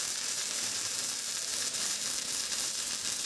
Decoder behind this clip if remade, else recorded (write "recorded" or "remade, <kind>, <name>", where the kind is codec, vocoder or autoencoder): remade, vocoder, BigVGAN v2